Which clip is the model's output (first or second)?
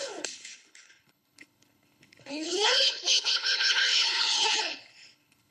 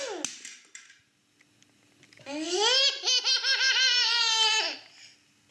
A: first